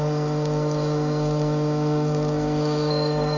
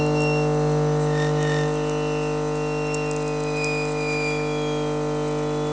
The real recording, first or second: second